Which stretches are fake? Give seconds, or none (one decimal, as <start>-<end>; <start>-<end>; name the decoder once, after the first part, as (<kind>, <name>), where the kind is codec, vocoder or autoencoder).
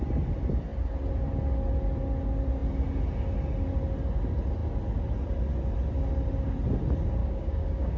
7.2-8.0 (codec, DAC)